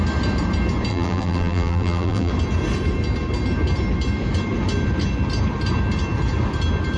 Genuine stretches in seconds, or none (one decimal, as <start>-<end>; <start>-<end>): 0.0-0.9; 2.3-7.0